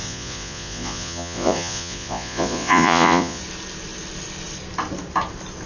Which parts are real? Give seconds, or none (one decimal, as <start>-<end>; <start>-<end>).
3.4-5.7